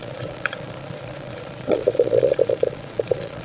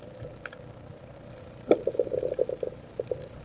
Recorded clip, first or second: second